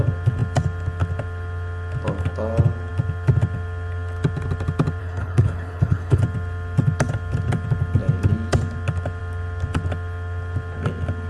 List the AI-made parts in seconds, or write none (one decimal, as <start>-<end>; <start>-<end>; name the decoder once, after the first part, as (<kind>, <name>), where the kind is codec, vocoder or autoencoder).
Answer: 5.0-6.2 (codec, HILCodec)

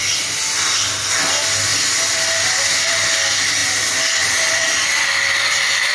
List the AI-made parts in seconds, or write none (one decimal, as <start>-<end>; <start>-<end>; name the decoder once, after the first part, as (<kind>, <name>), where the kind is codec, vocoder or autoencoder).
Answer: none

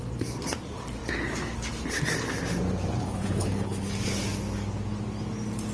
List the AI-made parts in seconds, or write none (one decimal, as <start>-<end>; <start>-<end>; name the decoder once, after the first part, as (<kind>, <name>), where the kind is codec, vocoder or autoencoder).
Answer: 3.0-3.9 (codec, HILCodec)

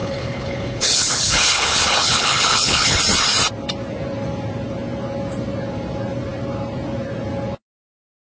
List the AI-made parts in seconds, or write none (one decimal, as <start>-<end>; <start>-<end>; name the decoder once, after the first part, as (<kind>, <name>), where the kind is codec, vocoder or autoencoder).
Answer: 0.0-3.0 (codec, HILCodec)

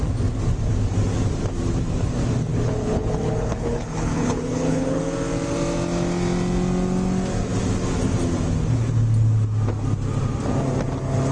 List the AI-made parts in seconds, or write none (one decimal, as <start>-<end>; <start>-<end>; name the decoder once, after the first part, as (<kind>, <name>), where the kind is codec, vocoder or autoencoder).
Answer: 2.5-5.0 (codec, HILCodec)

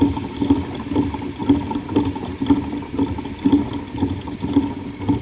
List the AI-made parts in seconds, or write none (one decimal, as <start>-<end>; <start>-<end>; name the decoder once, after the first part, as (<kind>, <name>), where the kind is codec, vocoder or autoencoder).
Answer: none

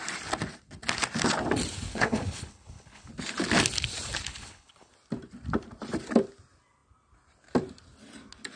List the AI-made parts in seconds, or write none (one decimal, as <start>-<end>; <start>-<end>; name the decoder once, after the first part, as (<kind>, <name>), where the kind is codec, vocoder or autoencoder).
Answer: 1.9-3.1 (codec, HILCodec); 4.3-4.9